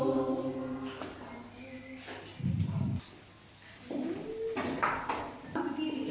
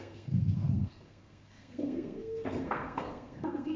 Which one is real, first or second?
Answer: first